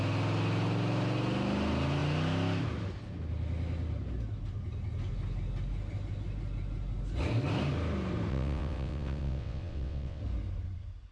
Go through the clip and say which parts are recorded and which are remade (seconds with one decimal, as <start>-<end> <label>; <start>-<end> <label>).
0.0-8.3 recorded; 8.3-10.2 remade; 10.2-11.1 recorded